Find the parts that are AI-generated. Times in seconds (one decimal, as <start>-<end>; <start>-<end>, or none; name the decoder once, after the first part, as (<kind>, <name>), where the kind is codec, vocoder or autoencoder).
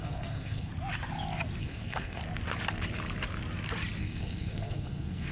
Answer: 0.0-0.7 (codec, SNAC); 1.6-2.2; 4.0-5.3